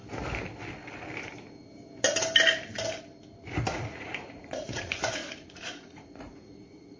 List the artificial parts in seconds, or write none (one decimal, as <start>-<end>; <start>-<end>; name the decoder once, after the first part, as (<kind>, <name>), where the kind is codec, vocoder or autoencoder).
3.7-7.0 (vocoder, Vocos)